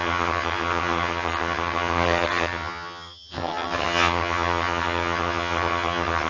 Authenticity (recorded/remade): remade